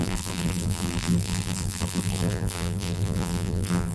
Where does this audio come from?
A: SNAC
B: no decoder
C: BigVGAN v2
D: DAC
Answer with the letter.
C